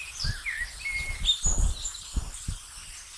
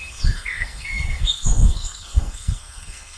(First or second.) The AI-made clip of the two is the second